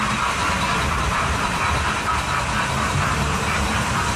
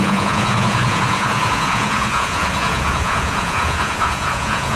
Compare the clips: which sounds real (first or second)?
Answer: first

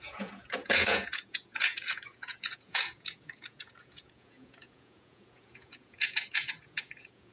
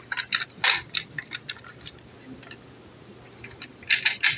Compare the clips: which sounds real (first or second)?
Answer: second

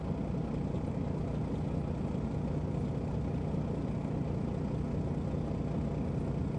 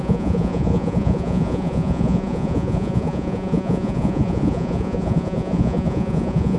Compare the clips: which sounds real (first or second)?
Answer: first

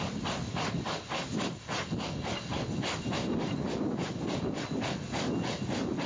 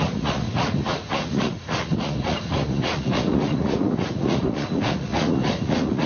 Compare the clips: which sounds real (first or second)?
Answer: first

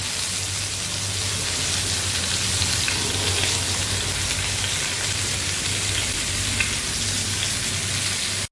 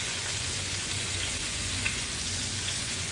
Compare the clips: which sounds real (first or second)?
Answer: first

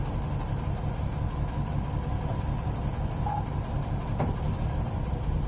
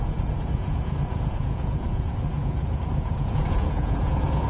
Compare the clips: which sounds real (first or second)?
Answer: first